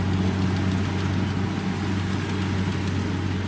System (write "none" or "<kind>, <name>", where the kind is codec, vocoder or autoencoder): none